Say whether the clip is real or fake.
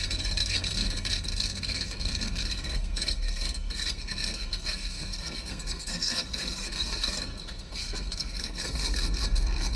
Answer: fake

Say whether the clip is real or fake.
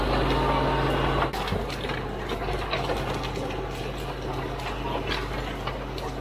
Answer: real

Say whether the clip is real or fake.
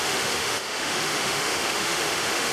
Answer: fake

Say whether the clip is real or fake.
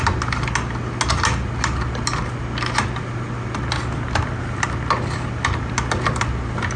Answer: real